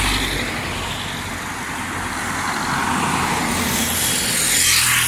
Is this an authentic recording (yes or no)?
yes